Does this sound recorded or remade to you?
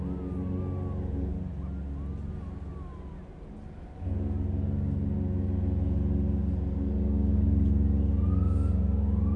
recorded